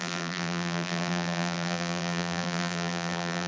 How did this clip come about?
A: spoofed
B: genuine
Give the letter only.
A